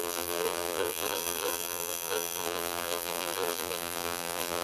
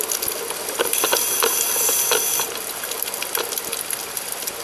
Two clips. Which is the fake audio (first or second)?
first